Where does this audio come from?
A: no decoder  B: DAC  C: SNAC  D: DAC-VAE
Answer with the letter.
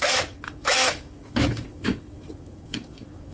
D